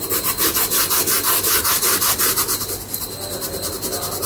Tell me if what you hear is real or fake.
real